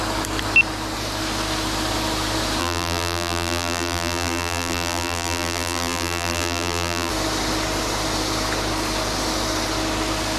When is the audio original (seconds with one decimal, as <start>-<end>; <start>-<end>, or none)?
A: 0.0-2.6; 7.1-10.4